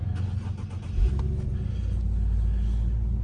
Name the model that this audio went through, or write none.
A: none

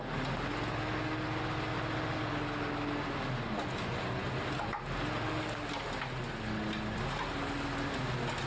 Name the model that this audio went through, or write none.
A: none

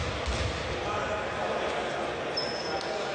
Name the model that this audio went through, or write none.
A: none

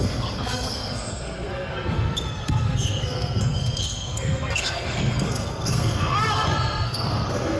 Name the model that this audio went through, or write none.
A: codec, SNAC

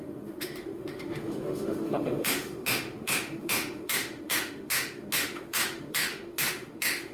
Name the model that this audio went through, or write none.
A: autoencoder, DAC-VAE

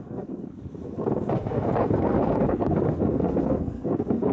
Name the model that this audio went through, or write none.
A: codec, SNAC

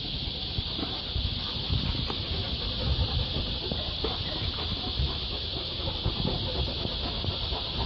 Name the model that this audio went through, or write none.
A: none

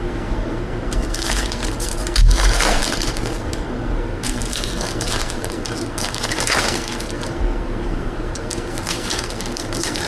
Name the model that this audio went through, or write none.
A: codec, SNAC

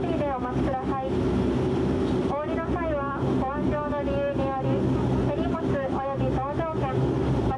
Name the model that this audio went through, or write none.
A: none